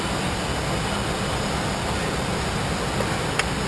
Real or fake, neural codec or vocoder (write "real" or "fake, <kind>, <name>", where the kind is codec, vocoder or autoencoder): real